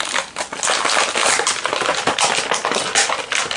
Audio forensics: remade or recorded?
recorded